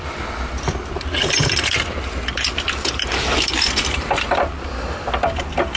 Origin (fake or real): fake